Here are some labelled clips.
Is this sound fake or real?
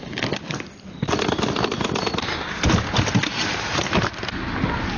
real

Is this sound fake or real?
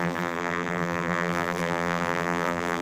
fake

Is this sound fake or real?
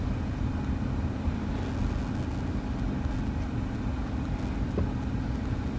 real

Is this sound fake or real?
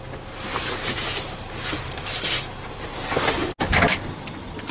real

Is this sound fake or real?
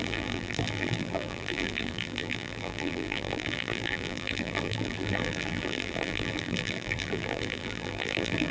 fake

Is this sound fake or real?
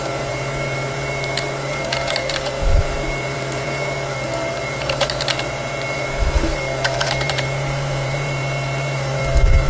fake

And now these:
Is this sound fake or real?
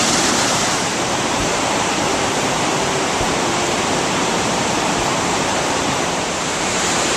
fake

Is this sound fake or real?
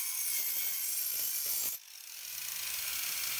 real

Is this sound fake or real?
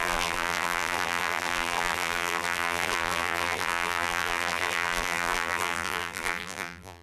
fake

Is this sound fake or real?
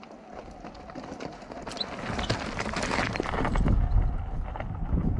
real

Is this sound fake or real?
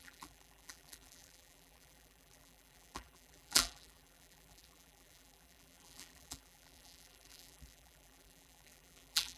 fake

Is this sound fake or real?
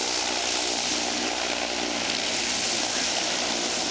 real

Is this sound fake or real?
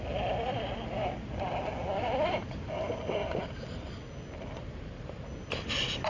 real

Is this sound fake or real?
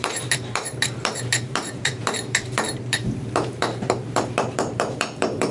fake